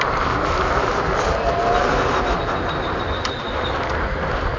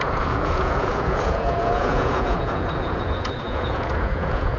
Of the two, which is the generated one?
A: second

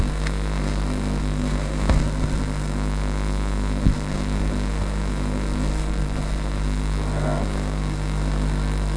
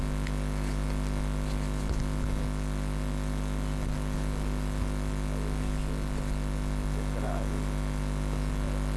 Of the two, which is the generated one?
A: first